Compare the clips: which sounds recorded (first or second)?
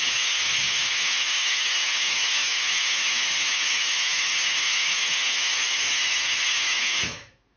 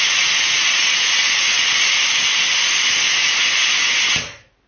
second